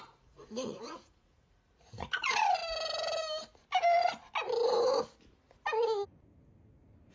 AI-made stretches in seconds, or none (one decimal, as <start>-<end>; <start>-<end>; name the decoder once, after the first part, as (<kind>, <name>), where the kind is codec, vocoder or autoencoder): 0.0-2.6 (vocoder, Vocos)